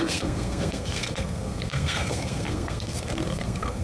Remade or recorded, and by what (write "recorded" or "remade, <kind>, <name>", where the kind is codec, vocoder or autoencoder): remade, codec, SNAC